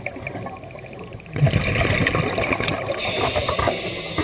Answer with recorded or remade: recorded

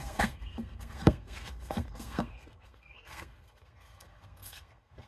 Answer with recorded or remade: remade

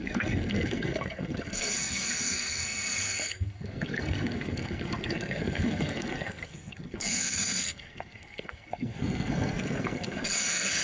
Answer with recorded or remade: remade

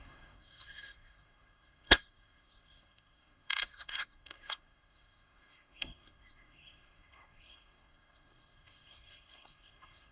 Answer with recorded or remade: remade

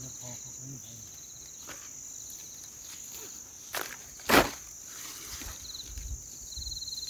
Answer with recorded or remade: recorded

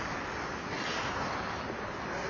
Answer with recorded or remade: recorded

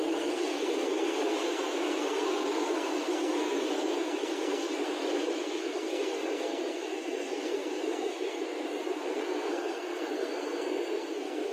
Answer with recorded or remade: remade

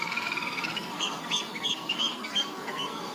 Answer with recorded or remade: remade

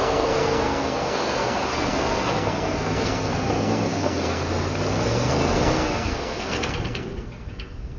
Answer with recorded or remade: remade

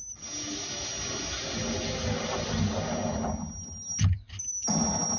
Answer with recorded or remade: recorded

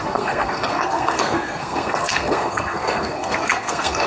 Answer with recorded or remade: remade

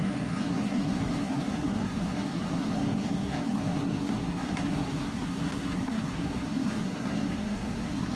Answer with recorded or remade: remade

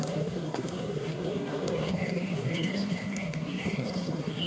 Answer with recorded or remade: remade